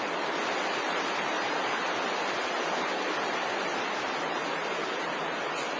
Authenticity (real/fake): real